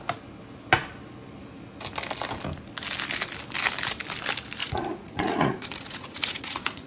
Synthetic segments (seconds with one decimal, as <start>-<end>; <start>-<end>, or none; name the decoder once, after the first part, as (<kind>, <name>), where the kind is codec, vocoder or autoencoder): 4.6-6.9 (vocoder, Vocos)